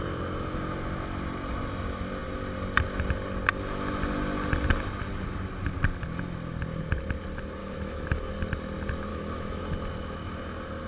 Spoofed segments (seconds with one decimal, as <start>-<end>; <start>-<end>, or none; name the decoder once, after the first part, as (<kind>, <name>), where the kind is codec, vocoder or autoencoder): 7.6-8.3 (autoencoder, DAC-VAE); 9.1-9.6